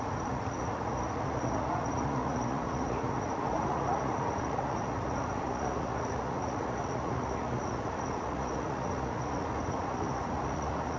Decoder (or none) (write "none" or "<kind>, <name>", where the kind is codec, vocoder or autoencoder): vocoder, Vocos